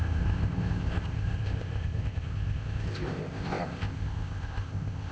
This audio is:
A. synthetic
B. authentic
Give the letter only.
A